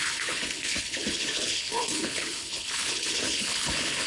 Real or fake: fake